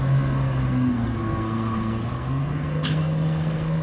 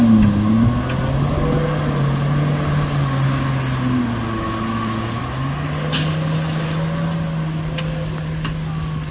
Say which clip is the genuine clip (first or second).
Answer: second